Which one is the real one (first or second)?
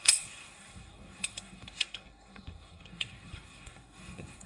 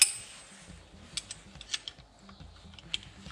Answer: second